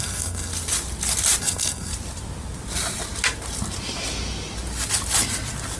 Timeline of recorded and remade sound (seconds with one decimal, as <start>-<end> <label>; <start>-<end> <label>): 0.0-0.5 remade; 0.5-1.4 recorded; 1.4-1.9 remade; 1.9-5.8 recorded